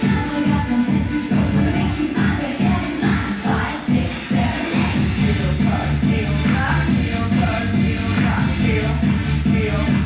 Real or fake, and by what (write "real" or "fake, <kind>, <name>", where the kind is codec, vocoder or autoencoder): real